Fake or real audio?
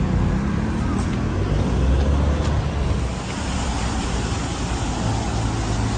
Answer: real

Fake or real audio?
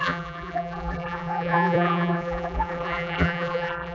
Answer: fake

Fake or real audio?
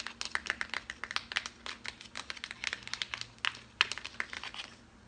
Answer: real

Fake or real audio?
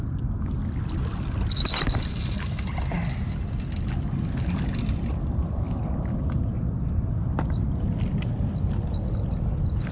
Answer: real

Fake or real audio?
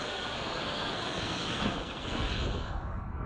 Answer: fake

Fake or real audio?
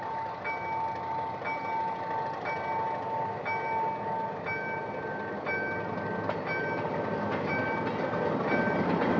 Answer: real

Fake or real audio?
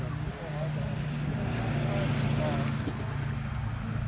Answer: real